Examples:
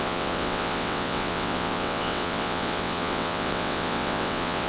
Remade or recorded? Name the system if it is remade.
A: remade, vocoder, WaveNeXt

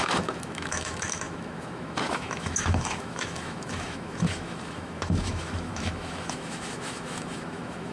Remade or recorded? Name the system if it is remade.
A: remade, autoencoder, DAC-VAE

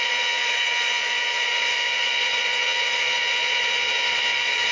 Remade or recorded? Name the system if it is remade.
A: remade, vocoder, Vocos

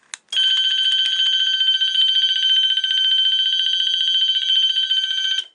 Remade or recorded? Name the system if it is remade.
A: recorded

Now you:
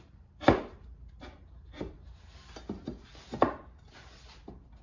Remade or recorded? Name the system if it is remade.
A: recorded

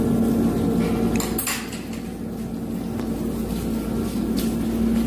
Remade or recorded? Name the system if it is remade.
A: recorded